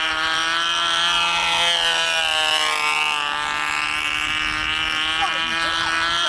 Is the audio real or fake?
real